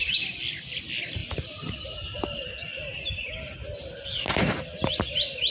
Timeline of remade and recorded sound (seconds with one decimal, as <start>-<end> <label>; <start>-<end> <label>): 0.0-5.5 recorded